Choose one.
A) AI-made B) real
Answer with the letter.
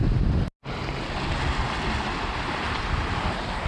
B